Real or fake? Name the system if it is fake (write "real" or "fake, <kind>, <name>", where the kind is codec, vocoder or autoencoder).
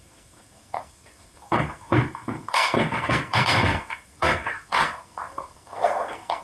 fake, codec, SNAC